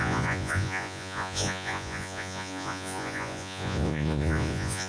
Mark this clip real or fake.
fake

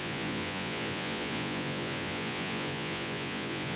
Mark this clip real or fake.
fake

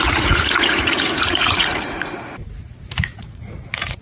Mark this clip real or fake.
fake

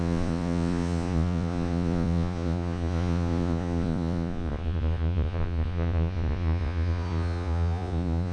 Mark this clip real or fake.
fake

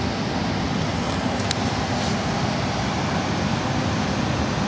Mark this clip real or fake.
real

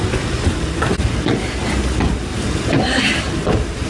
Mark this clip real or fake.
real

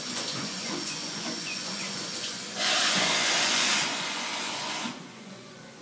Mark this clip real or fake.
fake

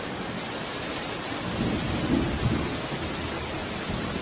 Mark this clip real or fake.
real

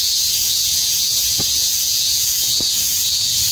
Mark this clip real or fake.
fake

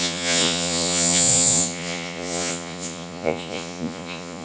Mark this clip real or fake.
fake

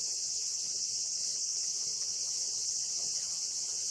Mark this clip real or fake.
fake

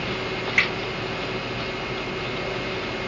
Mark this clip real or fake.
real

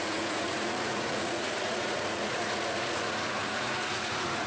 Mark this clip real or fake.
fake